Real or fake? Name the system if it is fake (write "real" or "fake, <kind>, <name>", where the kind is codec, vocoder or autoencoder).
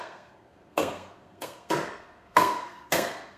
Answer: fake, codec, SNAC